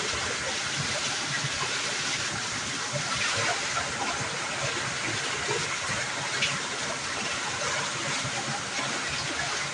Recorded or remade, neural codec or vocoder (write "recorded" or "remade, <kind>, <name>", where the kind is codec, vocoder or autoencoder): recorded